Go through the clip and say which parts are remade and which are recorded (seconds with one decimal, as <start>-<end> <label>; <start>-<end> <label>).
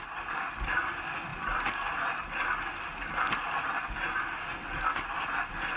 0.0-5.8 recorded